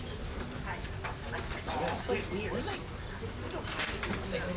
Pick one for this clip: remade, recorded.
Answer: recorded